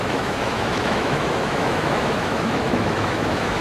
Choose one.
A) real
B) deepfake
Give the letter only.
B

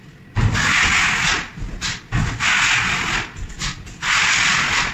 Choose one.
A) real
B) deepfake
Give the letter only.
A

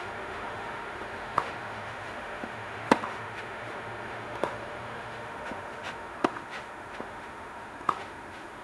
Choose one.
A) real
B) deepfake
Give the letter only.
B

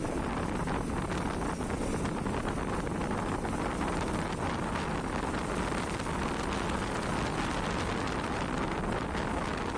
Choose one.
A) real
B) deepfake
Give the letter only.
A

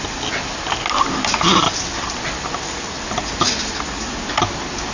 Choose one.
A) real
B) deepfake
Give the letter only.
A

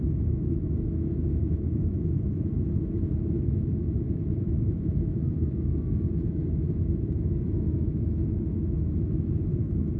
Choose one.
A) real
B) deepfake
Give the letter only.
B